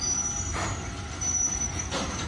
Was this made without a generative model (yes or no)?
yes